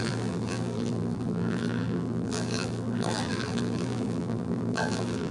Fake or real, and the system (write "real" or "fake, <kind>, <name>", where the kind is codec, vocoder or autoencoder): fake, vocoder, BigVGAN v2